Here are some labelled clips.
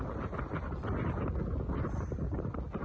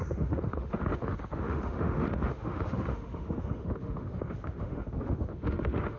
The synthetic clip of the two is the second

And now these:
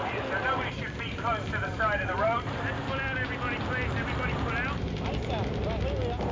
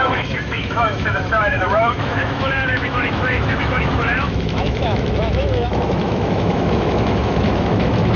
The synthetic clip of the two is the second